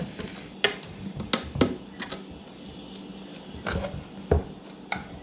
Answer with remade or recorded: recorded